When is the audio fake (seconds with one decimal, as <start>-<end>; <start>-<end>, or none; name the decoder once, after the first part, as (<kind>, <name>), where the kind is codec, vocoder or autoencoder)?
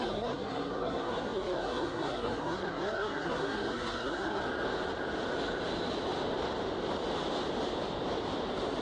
0.0-4.4 (codec, SNAC)